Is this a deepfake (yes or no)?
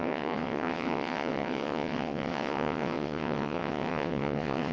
yes